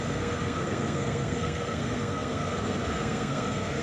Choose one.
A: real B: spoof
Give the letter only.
B